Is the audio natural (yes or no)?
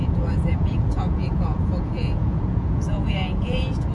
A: no